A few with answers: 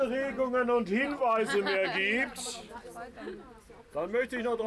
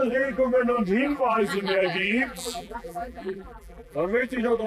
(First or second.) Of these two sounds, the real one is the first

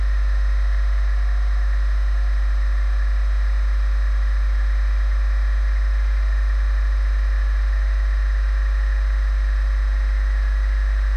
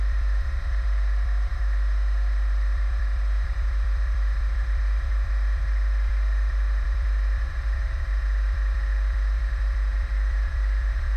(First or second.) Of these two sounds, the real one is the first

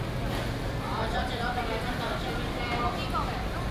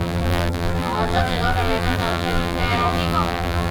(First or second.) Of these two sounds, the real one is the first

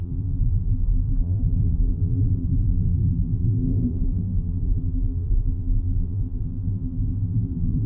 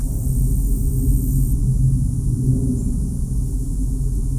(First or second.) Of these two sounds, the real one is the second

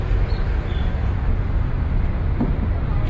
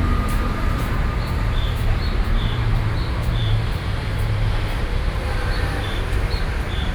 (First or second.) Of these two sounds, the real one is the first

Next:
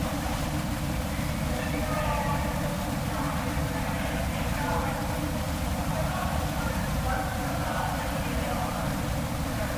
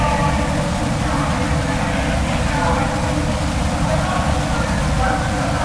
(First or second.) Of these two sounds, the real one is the second